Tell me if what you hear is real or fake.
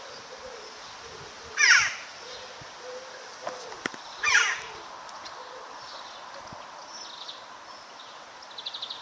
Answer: real